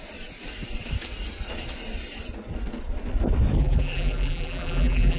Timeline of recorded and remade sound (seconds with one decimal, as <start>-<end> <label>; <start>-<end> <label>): 0.0-3.6 recorded; 3.6-5.2 remade